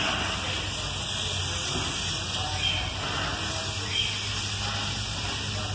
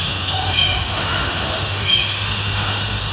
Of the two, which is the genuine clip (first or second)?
first